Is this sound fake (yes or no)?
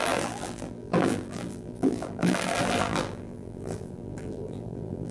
yes